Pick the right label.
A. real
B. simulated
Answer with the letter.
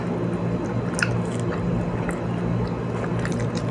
A